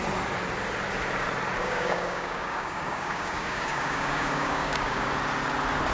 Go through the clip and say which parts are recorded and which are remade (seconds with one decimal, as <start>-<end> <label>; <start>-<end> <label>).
0.0-1.6 recorded; 1.6-5.1 remade; 5.1-5.9 recorded